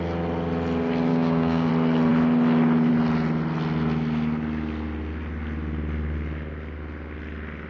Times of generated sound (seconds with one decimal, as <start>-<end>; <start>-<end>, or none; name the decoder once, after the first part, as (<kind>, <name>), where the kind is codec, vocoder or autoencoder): 1.1-1.7 (codec, DAC)